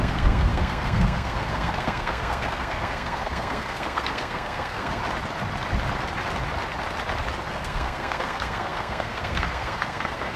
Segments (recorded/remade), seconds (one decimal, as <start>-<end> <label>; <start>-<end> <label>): 0.0-5.0 remade; 5.0-7.5 recorded; 7.5-10.4 remade

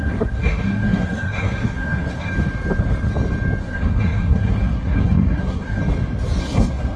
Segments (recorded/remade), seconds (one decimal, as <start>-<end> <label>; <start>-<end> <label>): 0.0-2.3 remade; 2.3-3.6 recorded; 3.6-5.8 remade; 5.8-6.4 recorded; 6.4-7.0 remade

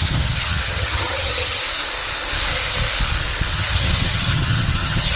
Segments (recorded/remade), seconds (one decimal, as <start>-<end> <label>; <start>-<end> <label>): 0.0-1.6 remade; 1.6-3.5 recorded; 3.5-5.2 remade

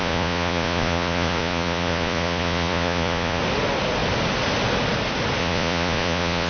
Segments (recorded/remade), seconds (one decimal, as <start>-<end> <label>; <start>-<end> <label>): 0.0-3.4 remade; 3.4-5.4 recorded; 5.4-6.5 remade

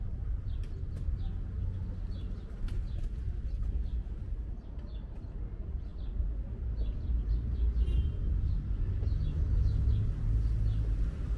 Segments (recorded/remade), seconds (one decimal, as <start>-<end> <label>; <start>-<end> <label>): 0.0-11.4 recorded

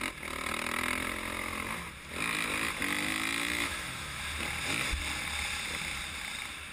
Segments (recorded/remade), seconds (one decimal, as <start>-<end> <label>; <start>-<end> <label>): 0.0-3.5 recorded; 3.5-4.2 remade; 4.2-6.7 recorded

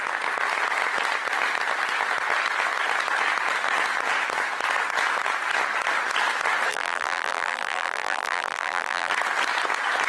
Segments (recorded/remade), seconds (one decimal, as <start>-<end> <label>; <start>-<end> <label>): 0.0-6.7 recorded; 6.7-9.1 remade; 9.1-10.1 recorded

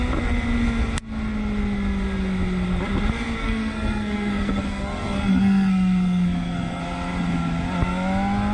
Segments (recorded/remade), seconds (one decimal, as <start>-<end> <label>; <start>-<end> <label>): 0.0-3.4 recorded; 3.4-6.8 remade; 6.8-8.5 recorded